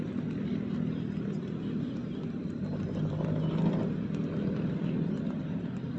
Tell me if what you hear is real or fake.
real